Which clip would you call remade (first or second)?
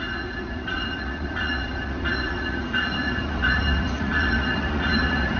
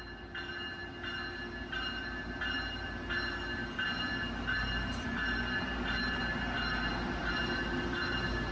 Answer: first